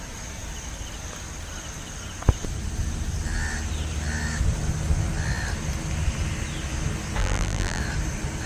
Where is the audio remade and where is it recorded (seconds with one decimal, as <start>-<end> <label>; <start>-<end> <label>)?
0.0-7.2 recorded; 7.2-7.8 remade; 7.8-8.5 recorded